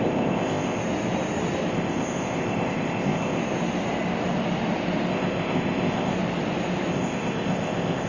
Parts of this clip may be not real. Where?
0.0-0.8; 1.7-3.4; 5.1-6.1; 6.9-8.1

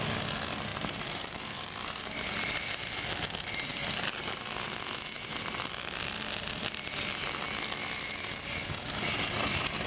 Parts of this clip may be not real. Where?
0.7-2.0

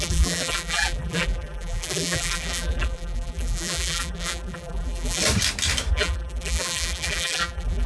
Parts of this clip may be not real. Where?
0.0-5.2; 5.9-7.9

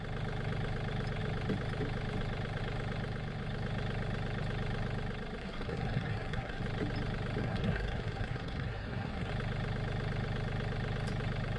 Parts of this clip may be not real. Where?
5.4-6.6; 7.4-9.3